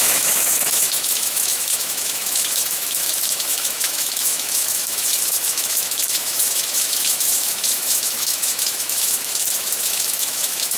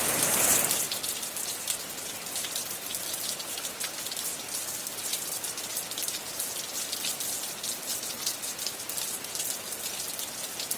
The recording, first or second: second